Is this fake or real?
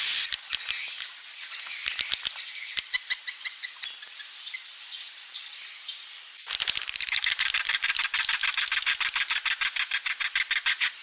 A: real